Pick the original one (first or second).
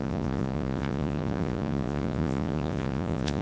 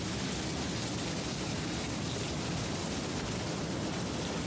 second